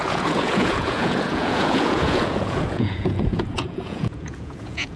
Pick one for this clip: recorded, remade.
remade